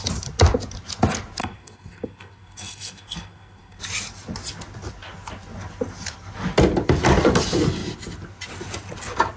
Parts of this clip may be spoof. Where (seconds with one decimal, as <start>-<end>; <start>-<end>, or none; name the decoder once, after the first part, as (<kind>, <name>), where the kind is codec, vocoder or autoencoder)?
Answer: 1.4-3.8 (codec, SNAC)